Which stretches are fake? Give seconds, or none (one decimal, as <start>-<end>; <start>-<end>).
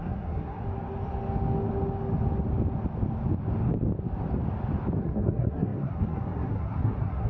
0.0-0.6; 5.0-7.3